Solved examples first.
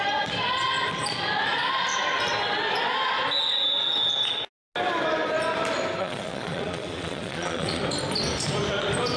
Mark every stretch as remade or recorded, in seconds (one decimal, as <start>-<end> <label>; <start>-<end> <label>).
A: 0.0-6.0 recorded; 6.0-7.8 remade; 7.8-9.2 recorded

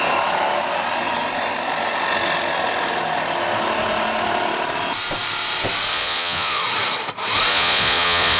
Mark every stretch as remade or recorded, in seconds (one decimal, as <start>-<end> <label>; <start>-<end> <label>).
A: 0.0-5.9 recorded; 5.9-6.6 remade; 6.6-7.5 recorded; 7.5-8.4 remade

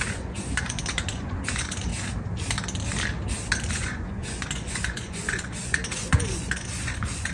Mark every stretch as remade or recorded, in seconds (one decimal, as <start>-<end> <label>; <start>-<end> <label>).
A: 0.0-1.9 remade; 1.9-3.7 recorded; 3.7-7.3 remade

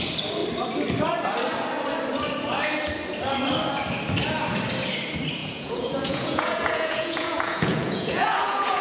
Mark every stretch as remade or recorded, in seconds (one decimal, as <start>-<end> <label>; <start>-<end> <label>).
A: 0.0-5.4 recorded; 5.4-8.8 remade

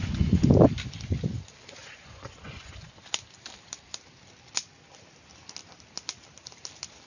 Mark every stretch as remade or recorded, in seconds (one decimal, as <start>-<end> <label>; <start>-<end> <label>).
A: 0.0-0.5 remade; 0.5-1.8 recorded; 1.8-3.0 remade; 3.0-7.1 recorded

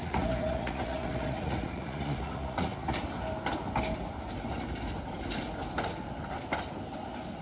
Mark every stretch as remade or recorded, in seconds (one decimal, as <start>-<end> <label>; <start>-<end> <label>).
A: 0.0-3.0 remade; 3.0-7.4 recorded

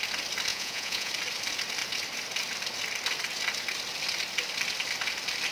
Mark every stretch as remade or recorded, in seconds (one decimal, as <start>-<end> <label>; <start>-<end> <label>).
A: 0.0-0.5 recorded; 0.5-1.1 remade; 1.1-5.5 recorded